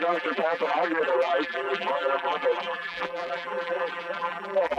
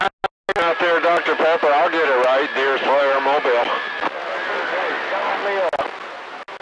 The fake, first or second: first